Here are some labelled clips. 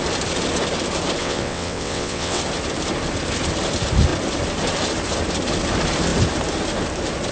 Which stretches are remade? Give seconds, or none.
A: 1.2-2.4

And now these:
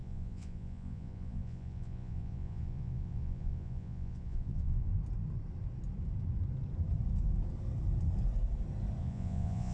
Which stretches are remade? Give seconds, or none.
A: 0.0-4.9; 9.0-9.7

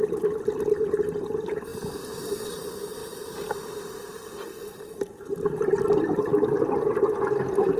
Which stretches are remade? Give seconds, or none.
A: none

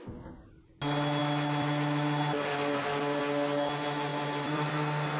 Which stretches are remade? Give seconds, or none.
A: 1.2-3.2; 4.1-4.7